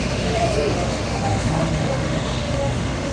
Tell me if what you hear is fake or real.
fake